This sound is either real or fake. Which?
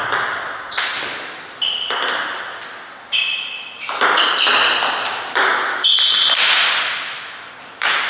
real